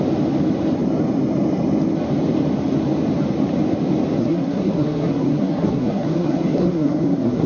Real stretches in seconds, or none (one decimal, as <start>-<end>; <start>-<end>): 0.0-4.2